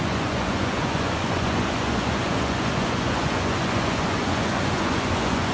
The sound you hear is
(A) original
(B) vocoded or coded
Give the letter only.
B